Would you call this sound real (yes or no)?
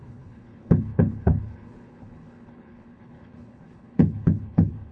no